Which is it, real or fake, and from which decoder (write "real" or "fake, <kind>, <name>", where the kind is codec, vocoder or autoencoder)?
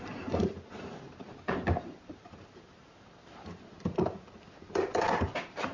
fake, vocoder, BigVGAN v2